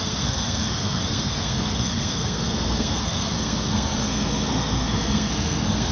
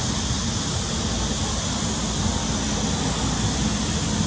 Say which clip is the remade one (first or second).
first